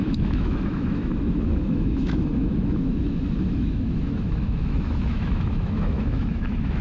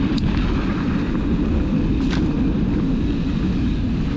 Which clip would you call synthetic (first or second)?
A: first